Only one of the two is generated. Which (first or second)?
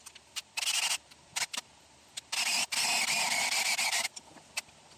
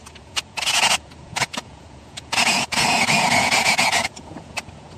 second